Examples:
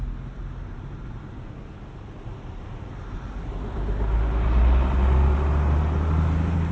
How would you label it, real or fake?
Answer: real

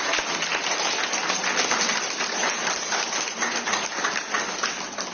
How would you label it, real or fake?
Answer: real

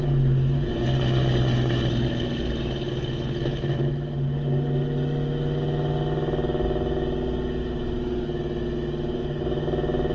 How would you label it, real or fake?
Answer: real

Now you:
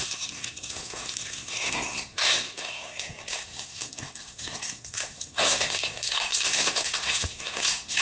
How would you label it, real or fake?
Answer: fake